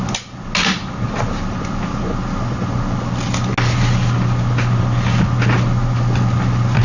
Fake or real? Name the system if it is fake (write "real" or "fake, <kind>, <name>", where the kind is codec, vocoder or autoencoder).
real